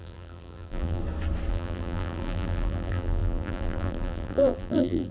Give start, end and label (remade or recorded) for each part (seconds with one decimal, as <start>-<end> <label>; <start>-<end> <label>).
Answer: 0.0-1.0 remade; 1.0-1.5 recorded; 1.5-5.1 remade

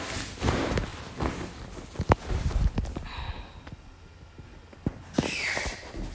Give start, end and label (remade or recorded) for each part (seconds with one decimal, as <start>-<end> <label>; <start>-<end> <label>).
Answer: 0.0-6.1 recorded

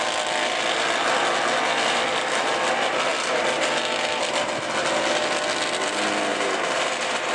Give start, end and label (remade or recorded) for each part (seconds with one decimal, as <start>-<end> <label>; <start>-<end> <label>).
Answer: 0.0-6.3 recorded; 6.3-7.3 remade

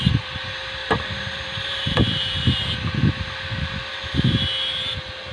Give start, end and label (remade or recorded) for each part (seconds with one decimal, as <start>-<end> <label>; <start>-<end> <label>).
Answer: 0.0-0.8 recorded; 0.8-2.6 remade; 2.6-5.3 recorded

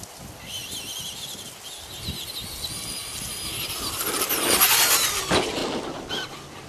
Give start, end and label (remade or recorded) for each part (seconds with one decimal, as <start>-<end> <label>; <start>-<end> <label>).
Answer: 0.0-0.6 remade; 0.6-4.3 recorded; 4.3-5.6 remade; 5.6-6.1 recorded; 6.1-6.7 remade